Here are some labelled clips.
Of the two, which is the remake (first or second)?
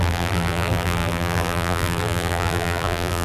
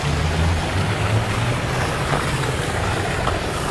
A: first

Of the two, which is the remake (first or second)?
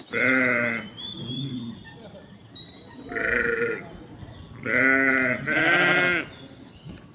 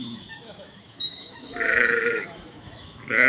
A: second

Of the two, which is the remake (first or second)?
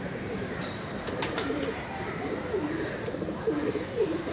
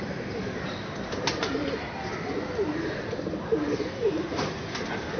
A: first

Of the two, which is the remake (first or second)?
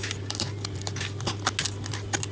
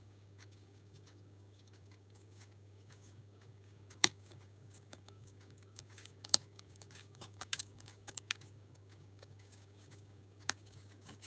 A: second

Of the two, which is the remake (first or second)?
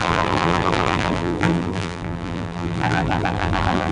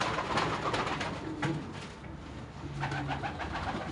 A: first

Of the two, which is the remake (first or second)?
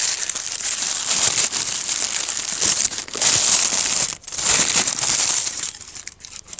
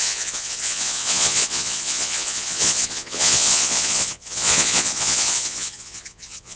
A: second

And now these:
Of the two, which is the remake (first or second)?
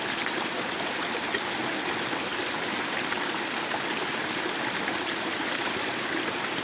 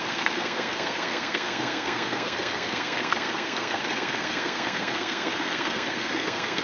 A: second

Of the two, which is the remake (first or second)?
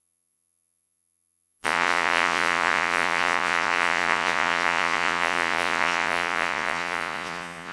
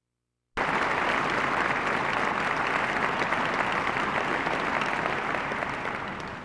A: first